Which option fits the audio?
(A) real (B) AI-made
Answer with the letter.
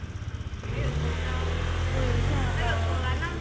A